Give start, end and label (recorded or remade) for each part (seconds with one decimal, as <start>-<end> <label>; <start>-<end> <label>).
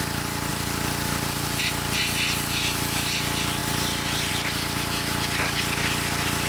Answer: 0.0-0.5 recorded; 0.5-2.0 remade; 2.0-6.5 recorded